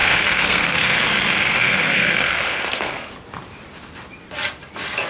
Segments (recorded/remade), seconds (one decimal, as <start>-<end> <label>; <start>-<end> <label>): 0.0-3.1 remade; 3.1-5.1 recorded